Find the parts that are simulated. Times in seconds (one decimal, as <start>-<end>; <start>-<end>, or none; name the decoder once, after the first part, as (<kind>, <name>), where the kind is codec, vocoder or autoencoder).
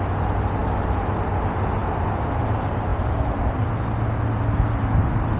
none